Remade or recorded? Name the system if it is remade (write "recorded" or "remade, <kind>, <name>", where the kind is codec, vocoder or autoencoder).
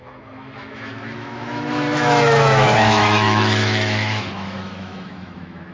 remade, autoencoder, DAC-VAE